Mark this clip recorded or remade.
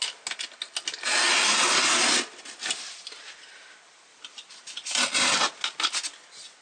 recorded